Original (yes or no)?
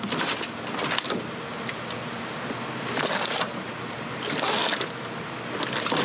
yes